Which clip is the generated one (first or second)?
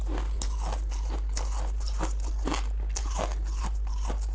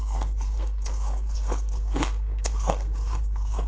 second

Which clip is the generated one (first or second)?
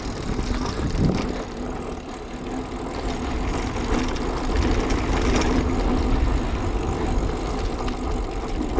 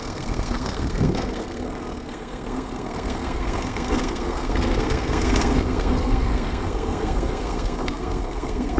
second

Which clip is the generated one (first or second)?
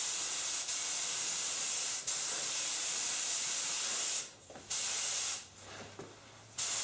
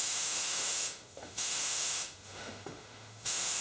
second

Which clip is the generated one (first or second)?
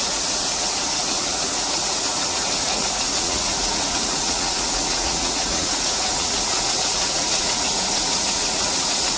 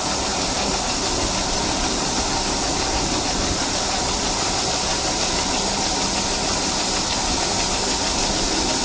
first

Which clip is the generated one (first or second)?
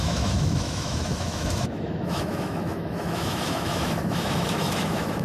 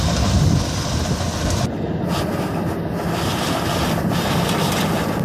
first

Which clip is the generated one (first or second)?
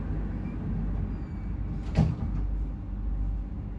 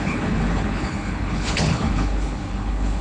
second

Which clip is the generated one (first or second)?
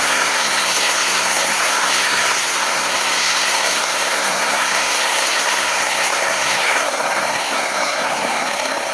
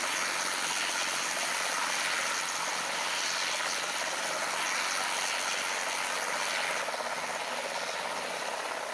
first